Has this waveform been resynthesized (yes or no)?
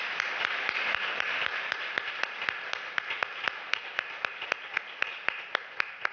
no